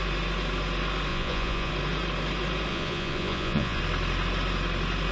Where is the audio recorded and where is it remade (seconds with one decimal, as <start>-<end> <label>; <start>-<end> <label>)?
0.0-1.1 recorded; 1.1-1.7 remade; 1.7-2.7 recorded; 2.7-3.8 remade; 3.8-5.1 recorded